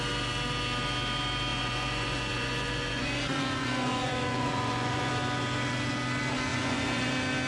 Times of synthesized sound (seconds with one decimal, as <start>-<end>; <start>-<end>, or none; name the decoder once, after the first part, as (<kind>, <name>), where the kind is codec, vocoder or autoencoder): 1.5-5.1 (vocoder, Vocos); 6.5-7.1